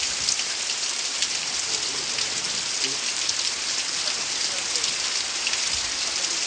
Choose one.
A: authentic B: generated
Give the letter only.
B